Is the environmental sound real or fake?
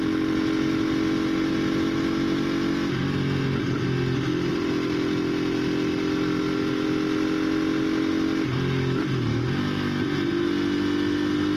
real